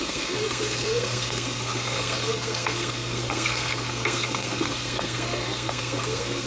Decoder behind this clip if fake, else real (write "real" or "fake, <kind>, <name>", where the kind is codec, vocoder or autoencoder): fake, codec, SNAC